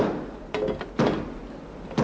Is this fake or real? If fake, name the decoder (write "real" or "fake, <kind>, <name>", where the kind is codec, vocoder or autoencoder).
real